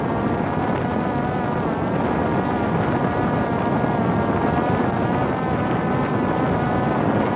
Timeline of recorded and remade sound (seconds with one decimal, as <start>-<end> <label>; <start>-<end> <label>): 0.0-7.4 recorded